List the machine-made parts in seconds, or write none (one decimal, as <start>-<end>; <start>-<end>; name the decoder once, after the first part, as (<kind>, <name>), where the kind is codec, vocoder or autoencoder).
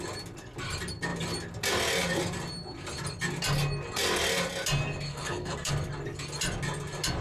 5.1-5.7 (codec, SNAC)